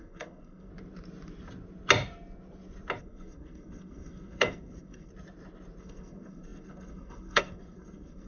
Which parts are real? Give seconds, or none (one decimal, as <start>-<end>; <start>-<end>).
0.7-3.0; 5.1-5.8